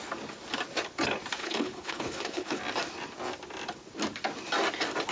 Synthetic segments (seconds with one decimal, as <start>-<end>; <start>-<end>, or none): 1.4-2.6